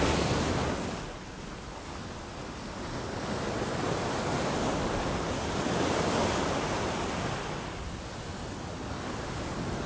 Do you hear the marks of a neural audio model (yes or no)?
no